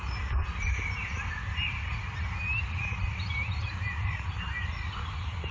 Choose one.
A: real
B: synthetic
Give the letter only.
A